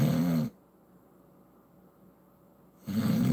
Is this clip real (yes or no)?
yes